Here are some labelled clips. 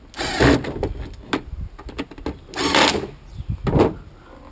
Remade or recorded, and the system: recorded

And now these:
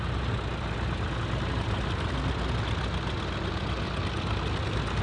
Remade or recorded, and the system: recorded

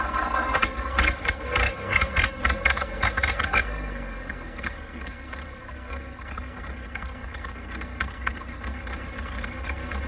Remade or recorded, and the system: remade, codec, SNAC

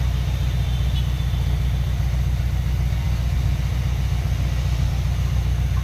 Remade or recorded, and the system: recorded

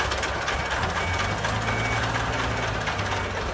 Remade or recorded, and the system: recorded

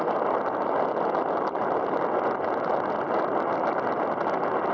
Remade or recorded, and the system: recorded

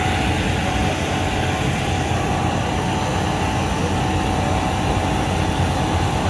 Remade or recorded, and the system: recorded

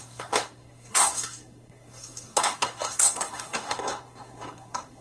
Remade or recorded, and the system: remade, codec, SNAC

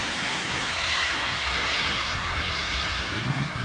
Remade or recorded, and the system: remade, codec, SNAC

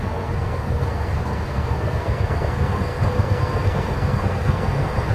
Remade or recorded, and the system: remade, codec, SNAC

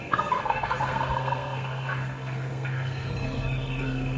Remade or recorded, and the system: remade, codec, SNAC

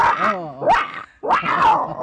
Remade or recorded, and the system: recorded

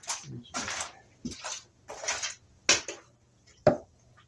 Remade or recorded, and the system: recorded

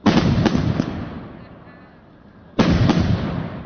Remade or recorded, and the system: recorded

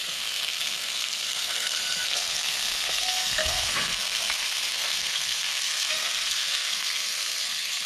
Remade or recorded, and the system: remade, codec, SNAC